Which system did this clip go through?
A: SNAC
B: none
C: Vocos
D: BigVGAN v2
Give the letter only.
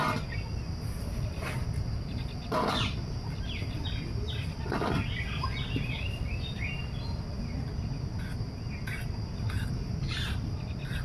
B